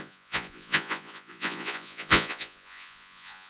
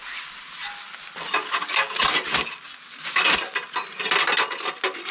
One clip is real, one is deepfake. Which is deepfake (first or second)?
first